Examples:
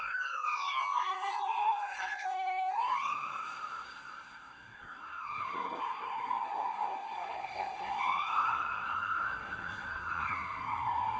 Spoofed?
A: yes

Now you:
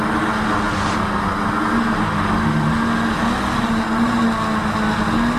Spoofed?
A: no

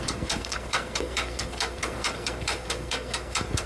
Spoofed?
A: yes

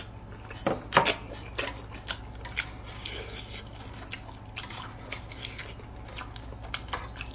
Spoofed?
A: no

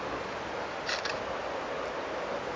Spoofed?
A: no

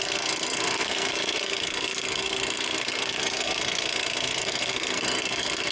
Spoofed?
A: yes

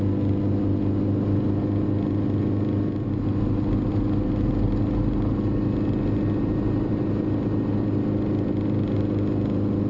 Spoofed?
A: no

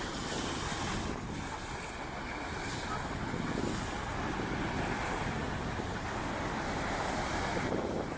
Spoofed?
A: no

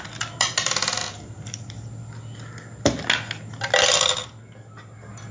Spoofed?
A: no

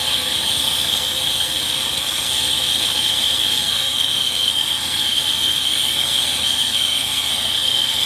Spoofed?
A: yes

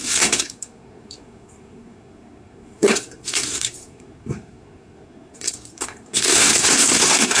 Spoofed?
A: yes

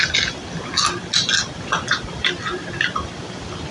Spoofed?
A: no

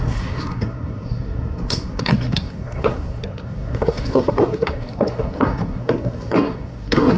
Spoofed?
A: yes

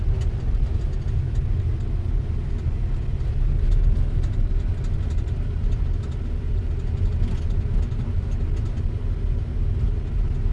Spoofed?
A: no